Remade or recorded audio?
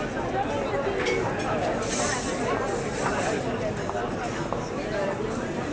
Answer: recorded